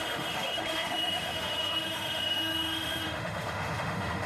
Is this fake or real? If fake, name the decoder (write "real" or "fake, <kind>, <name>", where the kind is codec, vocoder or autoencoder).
fake, autoencoder, DAC-VAE